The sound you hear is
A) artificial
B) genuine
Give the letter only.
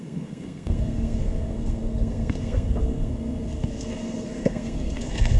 A